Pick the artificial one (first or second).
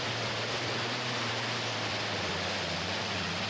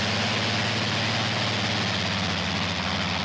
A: first